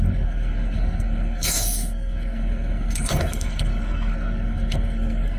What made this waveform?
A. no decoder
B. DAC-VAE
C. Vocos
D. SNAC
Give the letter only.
D